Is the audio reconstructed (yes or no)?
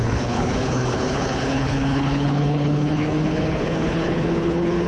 yes